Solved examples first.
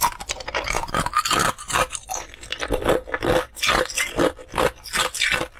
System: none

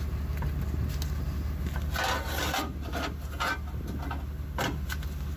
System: none